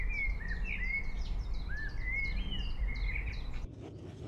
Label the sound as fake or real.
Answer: real